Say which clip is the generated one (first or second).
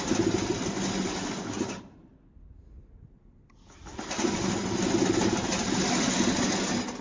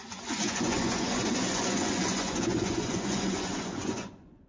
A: second